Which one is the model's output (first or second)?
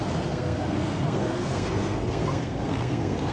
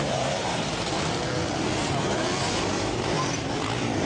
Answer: first